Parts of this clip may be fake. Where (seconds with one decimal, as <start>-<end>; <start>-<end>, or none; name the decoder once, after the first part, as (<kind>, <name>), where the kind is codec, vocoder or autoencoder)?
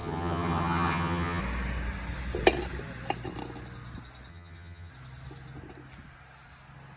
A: 0.0-1.4 (vocoder, HiFi-GAN); 4.3-4.9